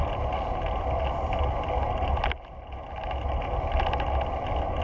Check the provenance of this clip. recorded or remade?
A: recorded